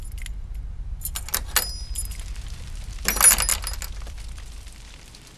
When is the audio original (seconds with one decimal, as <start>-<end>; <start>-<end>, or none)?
0.0-5.4